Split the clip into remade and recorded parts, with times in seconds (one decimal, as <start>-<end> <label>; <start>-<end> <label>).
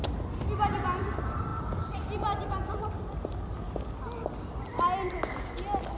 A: 0.0-6.0 recorded